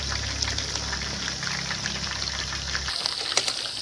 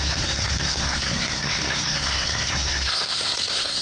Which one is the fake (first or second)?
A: second